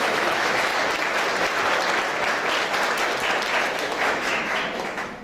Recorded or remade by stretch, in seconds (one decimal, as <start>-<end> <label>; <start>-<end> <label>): 0.0-0.7 remade; 0.7-3.8 recorded; 3.8-5.2 remade